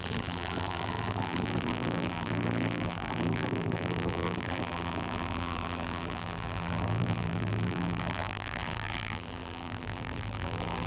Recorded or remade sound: remade